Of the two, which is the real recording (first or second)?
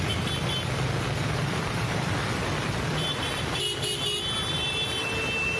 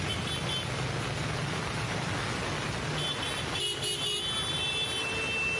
second